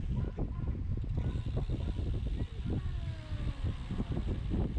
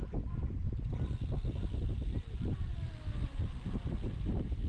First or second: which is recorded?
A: first